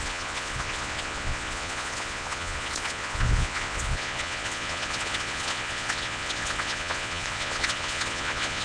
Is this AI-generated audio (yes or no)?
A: yes